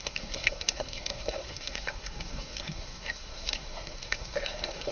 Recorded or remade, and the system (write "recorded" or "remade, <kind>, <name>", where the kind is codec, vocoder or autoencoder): remade, codec, SNAC